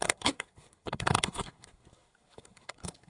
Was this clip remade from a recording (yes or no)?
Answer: yes